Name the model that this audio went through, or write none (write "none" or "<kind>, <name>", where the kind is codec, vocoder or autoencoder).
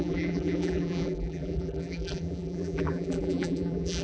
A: vocoder, BigVGAN v2